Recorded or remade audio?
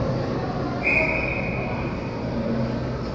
recorded